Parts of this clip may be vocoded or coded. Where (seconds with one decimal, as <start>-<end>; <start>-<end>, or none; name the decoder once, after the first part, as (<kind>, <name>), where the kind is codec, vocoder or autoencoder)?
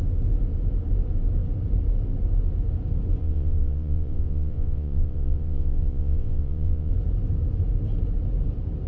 3.2-6.9 (vocoder, Vocos)